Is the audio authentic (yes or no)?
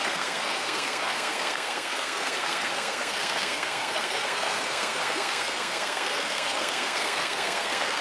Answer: no